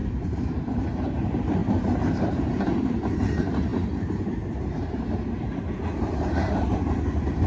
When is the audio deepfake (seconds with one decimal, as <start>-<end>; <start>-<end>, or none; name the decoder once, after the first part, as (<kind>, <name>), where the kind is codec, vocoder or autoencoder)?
0.0-7.5 (vocoder, BigVGAN v2)